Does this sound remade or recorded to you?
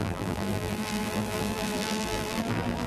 remade